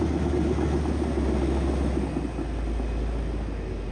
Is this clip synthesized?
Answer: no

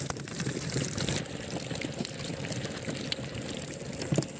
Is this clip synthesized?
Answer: no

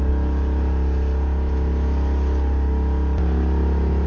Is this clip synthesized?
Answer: no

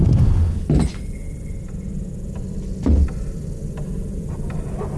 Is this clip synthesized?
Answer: no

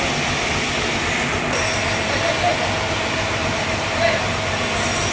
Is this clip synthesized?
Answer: no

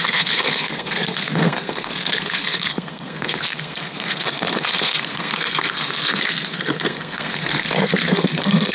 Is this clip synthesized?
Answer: yes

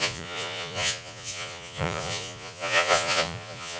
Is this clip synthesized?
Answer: yes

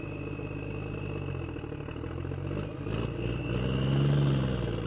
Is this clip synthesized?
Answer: no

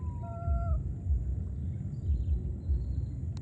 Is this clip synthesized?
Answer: no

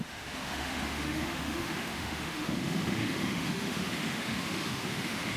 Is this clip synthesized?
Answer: yes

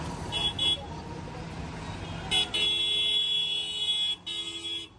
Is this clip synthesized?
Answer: no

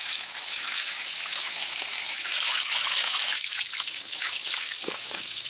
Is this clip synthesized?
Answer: yes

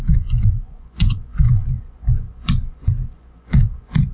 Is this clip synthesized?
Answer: yes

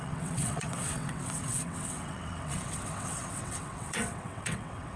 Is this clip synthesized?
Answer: yes